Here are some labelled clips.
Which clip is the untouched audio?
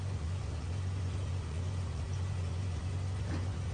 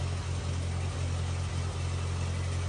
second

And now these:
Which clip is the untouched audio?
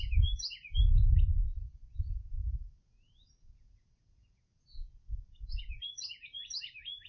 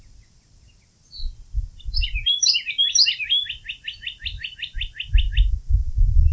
second